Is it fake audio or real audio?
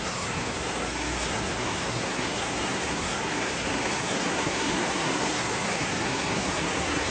fake